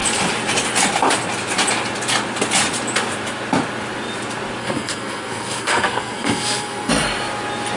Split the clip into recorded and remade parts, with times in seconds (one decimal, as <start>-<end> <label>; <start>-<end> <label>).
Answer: 0.0-4.6 recorded; 4.6-6.9 remade; 6.9-7.8 recorded

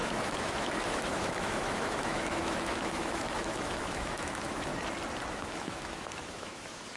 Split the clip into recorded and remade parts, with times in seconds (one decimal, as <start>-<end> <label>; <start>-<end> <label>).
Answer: 0.0-4.7 remade; 4.7-5.3 recorded; 5.3-7.0 remade